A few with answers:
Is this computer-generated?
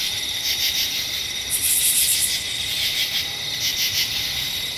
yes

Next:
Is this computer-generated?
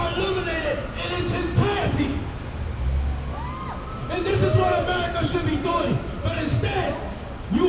no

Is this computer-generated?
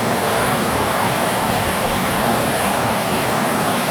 yes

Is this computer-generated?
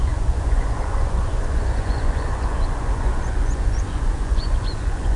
yes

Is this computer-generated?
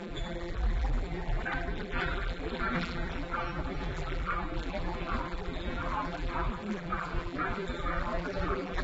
yes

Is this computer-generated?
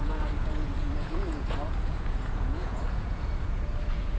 yes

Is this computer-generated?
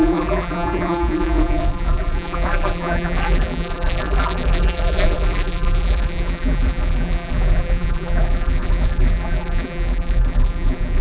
yes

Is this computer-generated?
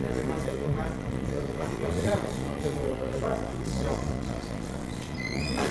yes